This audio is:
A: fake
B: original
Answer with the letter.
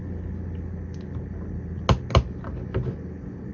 B